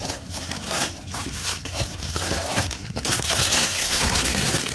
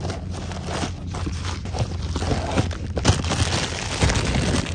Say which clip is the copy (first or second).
first